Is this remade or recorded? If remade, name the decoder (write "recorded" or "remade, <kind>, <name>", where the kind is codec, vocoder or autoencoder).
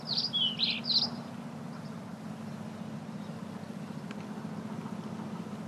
recorded